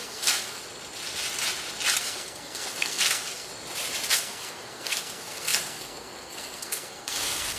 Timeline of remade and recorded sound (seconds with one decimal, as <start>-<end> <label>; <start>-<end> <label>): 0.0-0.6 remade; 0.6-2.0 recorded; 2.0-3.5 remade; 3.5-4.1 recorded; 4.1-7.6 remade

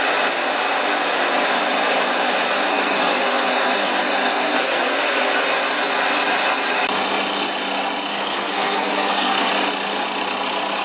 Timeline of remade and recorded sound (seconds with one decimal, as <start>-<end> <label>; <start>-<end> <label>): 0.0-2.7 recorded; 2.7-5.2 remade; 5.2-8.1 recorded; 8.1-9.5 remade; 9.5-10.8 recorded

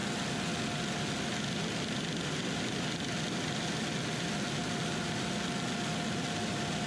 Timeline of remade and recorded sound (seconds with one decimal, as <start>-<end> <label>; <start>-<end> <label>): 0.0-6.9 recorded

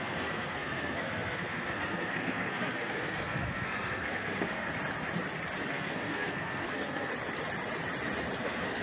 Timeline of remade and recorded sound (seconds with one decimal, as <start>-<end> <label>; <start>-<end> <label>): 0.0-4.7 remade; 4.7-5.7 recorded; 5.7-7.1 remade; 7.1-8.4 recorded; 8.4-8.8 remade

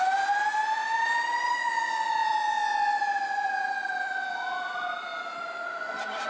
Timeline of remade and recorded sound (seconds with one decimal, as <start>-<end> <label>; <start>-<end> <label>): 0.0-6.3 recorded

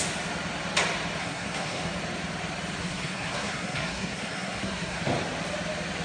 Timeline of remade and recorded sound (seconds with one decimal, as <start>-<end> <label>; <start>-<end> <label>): 0.0-1.2 recorded; 1.2-2.0 remade; 2.0-2.8 recorded; 2.8-5.0 remade; 5.0-6.0 recorded

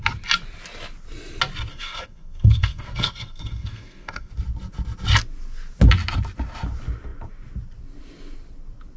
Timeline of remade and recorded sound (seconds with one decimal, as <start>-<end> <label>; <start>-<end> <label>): 0.0-1.7 recorded; 1.7-4.3 remade; 4.3-9.0 recorded